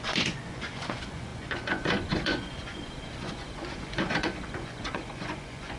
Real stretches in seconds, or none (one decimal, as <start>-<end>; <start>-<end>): none